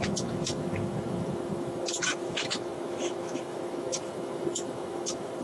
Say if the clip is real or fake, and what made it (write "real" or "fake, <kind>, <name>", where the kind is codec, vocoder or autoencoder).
fake, autoencoder, DAC-VAE